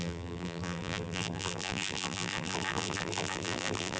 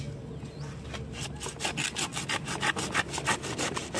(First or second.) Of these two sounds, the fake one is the first